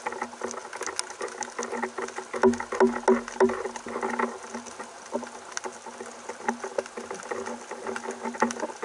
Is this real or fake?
real